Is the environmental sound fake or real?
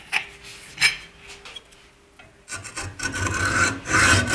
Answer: real